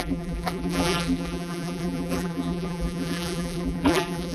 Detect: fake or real fake